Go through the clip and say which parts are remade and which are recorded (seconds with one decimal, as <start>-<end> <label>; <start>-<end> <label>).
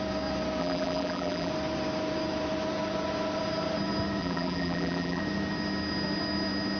0.0-0.6 recorded; 0.6-1.5 remade; 1.5-4.2 recorded; 4.2-5.2 remade; 5.2-6.8 recorded